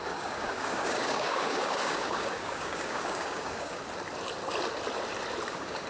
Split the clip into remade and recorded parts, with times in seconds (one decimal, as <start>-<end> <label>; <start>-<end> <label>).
0.0-3.8 remade; 3.8-5.5 recorded; 5.5-5.9 remade